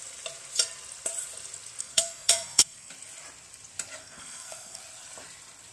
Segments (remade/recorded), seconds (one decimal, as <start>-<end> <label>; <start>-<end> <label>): 0.0-1.8 recorded; 1.8-2.9 remade; 2.9-4.0 recorded; 4.0-4.8 remade; 4.8-5.7 recorded